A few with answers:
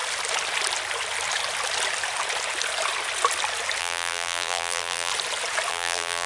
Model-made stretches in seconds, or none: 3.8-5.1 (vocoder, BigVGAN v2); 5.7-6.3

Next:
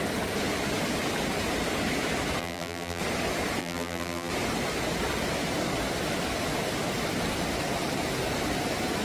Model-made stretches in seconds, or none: 2.4-3.0 (vocoder, BigVGAN v2); 3.6-4.3

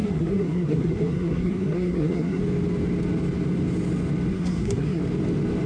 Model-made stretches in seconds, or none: 0.0-2.4 (codec, SNAC); 4.3-5.0

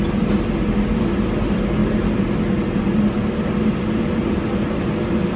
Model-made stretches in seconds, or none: none